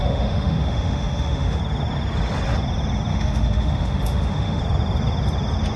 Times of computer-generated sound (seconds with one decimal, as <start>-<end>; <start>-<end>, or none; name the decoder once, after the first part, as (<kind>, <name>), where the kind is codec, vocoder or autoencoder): 0.0-1.6 (autoencoder, DAC-VAE); 3.1-4.6